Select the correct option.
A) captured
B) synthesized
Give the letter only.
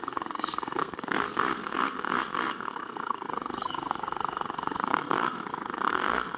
B